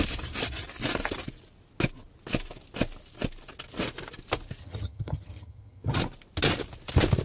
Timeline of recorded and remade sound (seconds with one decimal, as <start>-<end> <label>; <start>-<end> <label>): 0.0-4.6 recorded; 4.6-6.0 remade; 6.0-7.2 recorded